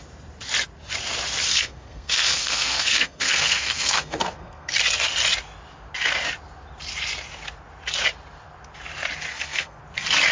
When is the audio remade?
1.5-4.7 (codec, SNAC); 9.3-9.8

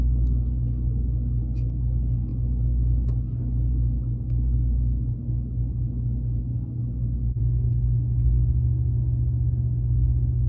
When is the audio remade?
none

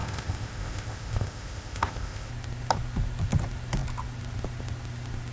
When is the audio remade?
0.0-2.3 (codec, ZipCodec)

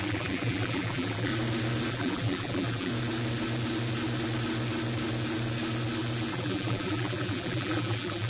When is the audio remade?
0.0-1.3 (vocoder, BigVGAN v2); 1.9-2.9; 6.3-8.3

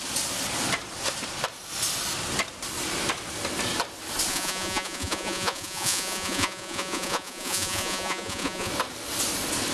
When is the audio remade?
4.3-8.7 (vocoder, Vocos)

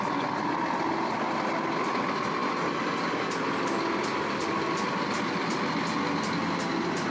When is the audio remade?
none

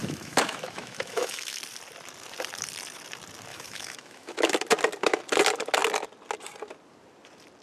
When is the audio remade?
0.0-1.6 (autoencoder, DAC-VAE); 3.5-4.5